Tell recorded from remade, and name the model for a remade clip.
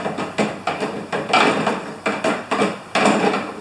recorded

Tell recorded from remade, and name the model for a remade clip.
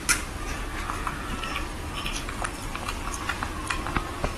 recorded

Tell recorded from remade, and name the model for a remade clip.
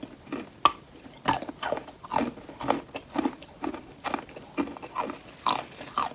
recorded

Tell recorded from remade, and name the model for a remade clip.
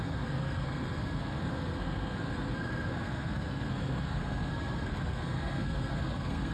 remade, codec, SNAC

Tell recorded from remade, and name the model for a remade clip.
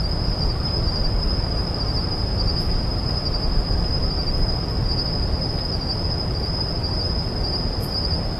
remade, vocoder, BigVGAN v2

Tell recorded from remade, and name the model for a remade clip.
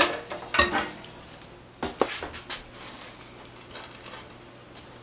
recorded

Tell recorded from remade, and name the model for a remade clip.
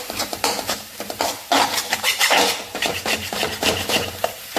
remade, vocoder, BigVGAN v2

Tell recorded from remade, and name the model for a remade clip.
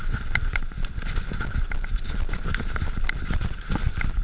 recorded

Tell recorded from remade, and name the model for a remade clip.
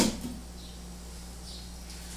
recorded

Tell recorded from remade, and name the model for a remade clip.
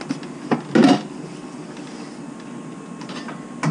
recorded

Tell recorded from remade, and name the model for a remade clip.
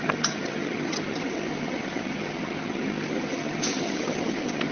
remade, vocoder, HiFi-GAN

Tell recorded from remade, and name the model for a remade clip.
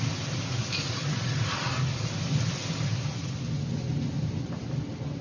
recorded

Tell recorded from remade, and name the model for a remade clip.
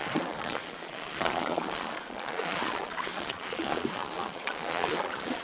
remade, vocoder, Vocos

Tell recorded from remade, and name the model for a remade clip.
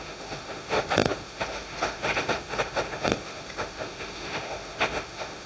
remade, autoencoder, DAC-VAE